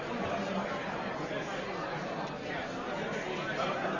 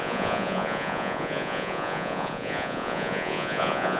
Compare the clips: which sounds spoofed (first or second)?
second